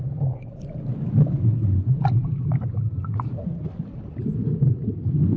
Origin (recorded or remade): recorded